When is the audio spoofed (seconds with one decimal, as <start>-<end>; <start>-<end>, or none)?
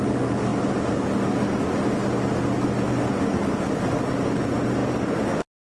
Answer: none